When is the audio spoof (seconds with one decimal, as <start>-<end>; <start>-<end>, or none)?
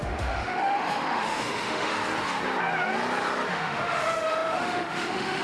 0.0-1.9; 3.5-5.4